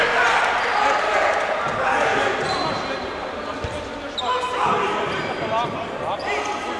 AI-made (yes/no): no